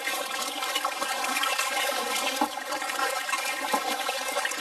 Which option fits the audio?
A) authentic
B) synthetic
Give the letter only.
B